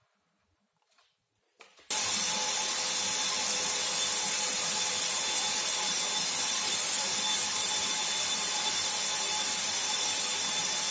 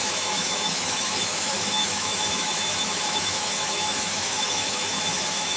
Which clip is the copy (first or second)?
second